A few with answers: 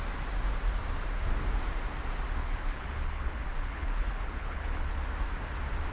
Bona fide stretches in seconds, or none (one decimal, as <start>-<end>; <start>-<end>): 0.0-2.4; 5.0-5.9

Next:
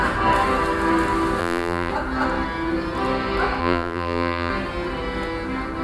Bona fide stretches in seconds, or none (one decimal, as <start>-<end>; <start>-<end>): 0.0-1.4; 1.9-3.6; 4.5-5.8

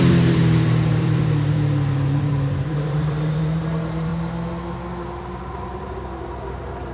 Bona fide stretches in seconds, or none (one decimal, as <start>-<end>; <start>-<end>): 4.1-5.5